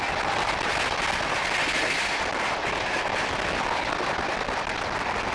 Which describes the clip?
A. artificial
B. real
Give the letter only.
B